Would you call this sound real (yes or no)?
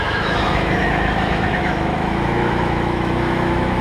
no